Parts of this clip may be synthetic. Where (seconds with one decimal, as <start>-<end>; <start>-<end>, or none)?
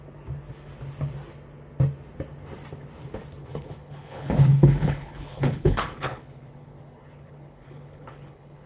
3.4-8.7